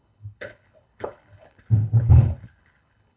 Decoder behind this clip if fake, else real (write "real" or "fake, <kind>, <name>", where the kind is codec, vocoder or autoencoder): fake, codec, HILCodec